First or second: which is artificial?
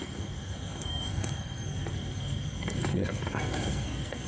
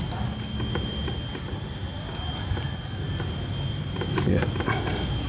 first